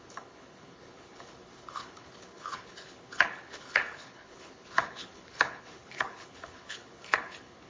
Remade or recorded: remade